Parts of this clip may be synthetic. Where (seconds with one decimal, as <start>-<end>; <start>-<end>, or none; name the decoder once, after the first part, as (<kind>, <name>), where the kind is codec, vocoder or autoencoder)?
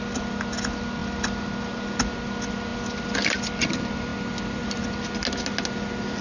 none